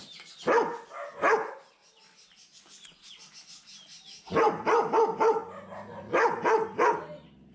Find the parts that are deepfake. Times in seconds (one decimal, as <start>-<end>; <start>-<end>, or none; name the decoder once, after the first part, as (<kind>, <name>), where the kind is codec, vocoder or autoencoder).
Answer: none